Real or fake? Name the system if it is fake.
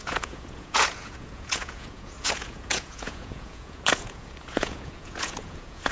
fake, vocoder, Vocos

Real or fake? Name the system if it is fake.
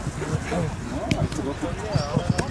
real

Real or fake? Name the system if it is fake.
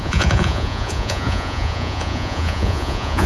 fake, vocoder, Vocos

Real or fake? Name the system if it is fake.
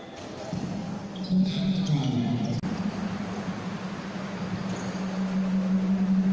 real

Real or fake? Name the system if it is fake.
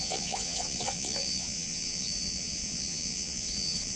fake, vocoder, Vocos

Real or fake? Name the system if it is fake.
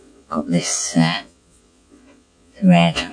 fake, vocoder, Vocos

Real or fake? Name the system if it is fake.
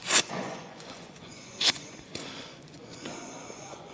fake, vocoder, Vocos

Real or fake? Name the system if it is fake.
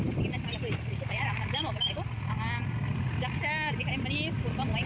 real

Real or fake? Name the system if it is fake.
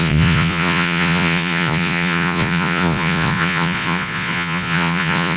fake, vocoder, Vocos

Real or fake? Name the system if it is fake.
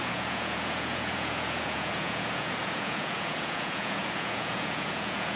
fake, vocoder, Vocos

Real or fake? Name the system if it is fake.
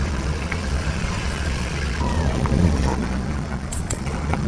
fake, vocoder, Vocos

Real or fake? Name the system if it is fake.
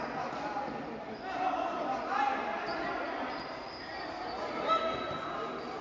real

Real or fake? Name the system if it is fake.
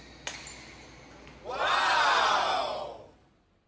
real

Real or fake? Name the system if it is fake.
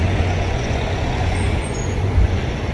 fake, vocoder, Vocos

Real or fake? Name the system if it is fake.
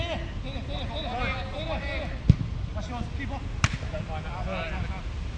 real